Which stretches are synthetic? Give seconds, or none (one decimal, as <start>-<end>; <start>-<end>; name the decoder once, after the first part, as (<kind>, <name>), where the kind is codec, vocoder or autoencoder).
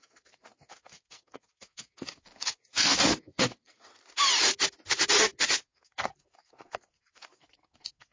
0.0-3.9 (codec, SNAC); 5.6-8.1